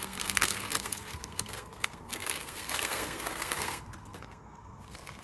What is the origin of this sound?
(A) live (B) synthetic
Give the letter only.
B